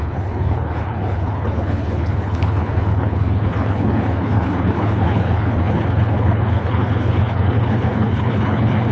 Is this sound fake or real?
fake